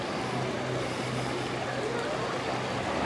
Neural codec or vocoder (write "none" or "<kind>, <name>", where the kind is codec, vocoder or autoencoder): none